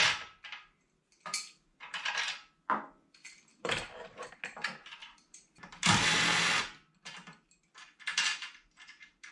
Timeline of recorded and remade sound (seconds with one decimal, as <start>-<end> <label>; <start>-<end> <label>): 0.0-3.5 recorded; 3.5-4.3 remade; 4.3-5.0 recorded; 5.0-6.1 remade; 6.1-8.1 recorded; 8.1-9.3 remade